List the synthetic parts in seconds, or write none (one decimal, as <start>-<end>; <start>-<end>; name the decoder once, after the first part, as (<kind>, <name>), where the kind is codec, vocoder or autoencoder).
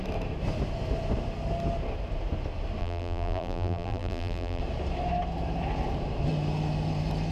2.8-4.6 (vocoder, BigVGAN v2)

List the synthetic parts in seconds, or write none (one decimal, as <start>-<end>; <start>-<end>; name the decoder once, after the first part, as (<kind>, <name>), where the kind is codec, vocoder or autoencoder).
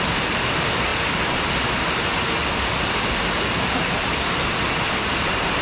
none